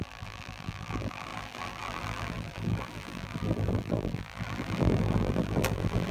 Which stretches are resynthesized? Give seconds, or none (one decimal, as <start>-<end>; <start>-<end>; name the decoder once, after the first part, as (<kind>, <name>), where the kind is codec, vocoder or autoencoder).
0.0-6.1 (vocoder, BigVGAN v2)